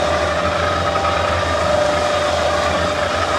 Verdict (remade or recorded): recorded